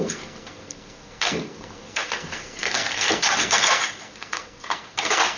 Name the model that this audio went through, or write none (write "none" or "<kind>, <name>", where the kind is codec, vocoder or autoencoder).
codec, SNAC